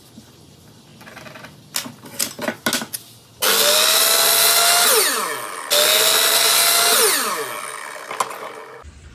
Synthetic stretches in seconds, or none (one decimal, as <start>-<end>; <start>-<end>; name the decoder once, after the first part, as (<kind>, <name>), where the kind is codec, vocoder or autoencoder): none